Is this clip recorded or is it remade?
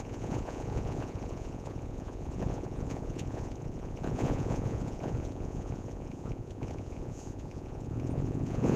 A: remade